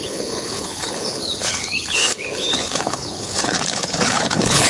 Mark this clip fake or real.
fake